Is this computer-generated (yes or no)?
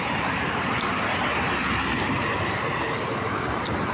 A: no